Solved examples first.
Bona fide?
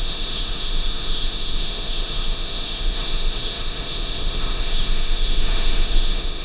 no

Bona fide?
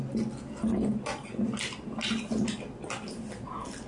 yes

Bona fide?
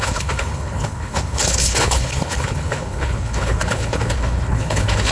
no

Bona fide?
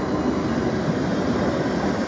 yes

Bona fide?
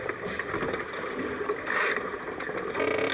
yes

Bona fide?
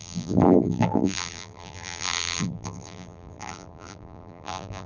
no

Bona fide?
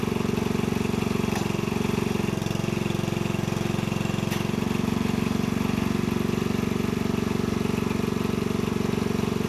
yes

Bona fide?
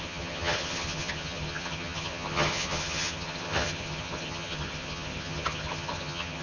no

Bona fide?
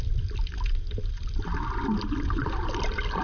yes